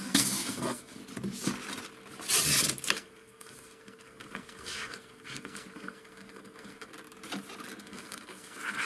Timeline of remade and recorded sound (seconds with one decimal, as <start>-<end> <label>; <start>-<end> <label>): 0.0-1.0 remade; 1.0-2.9 recorded; 2.9-6.9 remade; 6.9-7.8 recorded; 7.8-8.9 remade